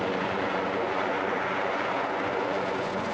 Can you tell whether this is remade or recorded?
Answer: remade